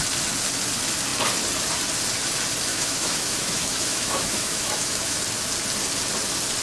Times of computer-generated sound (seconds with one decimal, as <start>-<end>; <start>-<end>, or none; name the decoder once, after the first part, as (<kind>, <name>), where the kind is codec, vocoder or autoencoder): 2.7-5.2 (autoencoder, DAC-VAE)